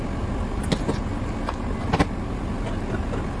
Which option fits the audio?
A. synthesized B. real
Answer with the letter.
B